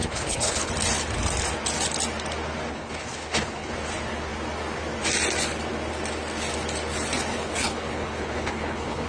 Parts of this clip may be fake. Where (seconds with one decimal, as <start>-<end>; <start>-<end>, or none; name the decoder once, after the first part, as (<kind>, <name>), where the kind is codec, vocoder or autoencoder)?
0.0-0.7 (codec, HILCodec); 2.7-3.7; 7.3-9.1